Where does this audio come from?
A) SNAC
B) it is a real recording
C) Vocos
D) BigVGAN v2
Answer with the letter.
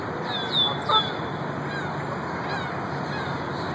B